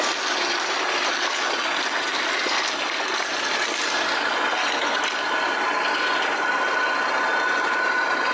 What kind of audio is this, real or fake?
real